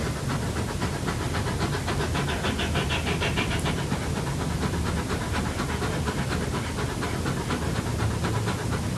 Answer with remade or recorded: recorded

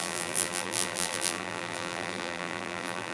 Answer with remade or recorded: remade